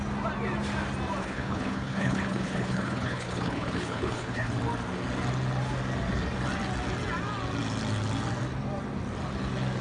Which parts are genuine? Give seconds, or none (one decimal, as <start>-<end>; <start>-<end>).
0.0-1.2; 4.5-9.8